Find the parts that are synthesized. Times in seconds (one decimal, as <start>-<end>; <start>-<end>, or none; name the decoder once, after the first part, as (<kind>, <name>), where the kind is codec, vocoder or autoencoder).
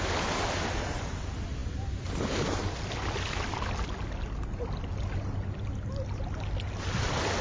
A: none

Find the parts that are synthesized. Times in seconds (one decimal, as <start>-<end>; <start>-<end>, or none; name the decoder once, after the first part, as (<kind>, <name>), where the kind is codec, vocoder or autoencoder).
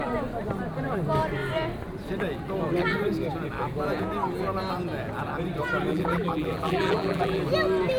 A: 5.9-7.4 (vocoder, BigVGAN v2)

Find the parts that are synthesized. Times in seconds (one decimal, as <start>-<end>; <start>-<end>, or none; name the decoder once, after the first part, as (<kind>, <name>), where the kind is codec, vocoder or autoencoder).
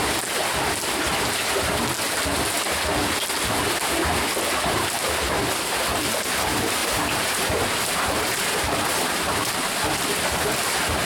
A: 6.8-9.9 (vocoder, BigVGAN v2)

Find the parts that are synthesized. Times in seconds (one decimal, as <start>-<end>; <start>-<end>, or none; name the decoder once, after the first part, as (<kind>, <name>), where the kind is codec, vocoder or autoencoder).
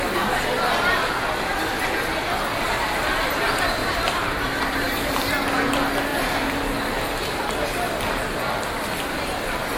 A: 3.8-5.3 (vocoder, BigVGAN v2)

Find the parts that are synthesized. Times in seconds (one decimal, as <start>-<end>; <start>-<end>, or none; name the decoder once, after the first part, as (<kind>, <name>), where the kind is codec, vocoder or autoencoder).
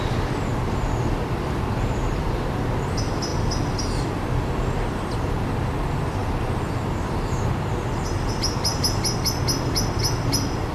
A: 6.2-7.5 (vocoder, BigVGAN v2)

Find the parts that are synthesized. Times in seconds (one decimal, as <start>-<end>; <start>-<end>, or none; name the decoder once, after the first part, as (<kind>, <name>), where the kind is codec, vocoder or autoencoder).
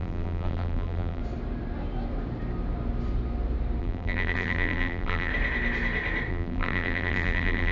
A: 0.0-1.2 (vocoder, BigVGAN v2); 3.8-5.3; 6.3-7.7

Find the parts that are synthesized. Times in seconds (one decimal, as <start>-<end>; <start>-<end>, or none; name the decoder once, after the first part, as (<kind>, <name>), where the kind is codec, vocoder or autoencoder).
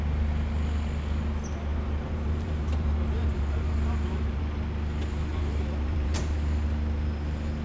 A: 1.7-4.4 (vocoder, BigVGAN v2); 5.3-6.2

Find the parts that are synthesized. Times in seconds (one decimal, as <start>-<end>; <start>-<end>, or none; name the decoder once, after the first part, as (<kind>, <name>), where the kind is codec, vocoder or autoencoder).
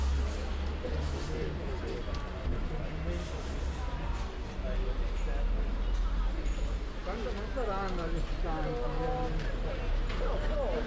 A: none